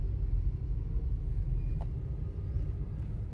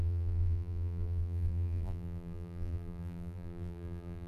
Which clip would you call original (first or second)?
first